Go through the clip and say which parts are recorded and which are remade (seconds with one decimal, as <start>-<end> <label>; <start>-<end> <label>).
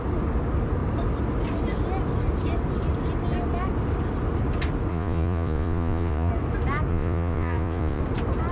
0.0-4.9 recorded; 4.9-6.3 remade; 6.3-6.9 recorded; 6.9-8.0 remade; 8.0-8.5 recorded